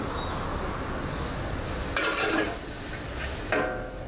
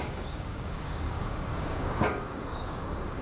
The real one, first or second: first